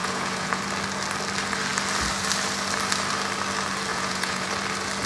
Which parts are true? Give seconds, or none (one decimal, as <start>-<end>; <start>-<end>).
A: 0.6-3.9; 4.5-5.1